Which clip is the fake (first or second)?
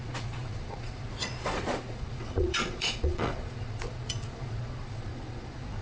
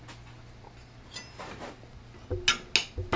first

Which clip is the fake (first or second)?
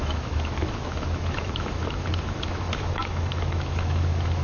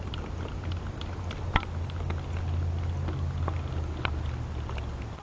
first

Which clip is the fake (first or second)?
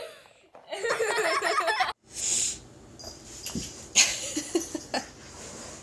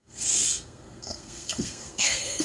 second